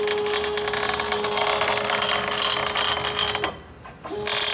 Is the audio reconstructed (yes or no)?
no